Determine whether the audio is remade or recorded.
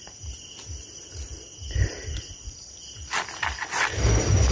recorded